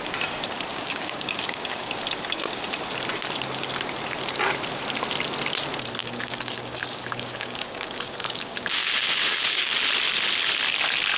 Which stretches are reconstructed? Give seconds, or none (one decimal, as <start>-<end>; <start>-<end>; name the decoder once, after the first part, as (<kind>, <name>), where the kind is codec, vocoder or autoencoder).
0.7-1.9 (codec, DAC); 6.0-9.7